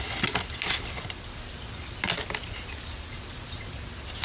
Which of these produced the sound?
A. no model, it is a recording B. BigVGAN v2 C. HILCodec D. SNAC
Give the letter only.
A